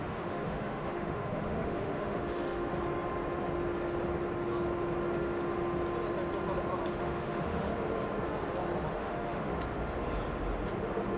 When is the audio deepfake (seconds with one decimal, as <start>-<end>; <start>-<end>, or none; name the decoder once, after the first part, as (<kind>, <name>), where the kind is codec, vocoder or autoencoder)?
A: 0.0-2.7 (autoencoder, DAC-VAE); 6.9-7.7; 8.9-9.5